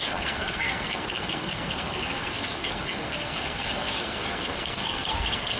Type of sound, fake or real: fake